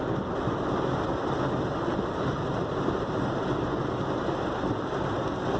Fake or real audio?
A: real